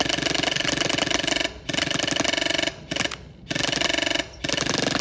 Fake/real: real